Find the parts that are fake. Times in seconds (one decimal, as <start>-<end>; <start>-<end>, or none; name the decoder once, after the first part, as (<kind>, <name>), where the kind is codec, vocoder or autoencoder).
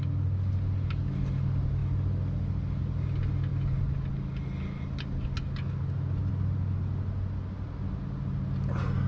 none